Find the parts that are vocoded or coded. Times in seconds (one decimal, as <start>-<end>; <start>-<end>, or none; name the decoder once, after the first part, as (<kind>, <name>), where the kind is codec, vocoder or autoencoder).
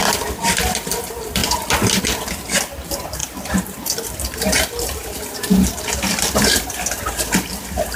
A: 0.0-8.0 (vocoder, BigVGAN v2)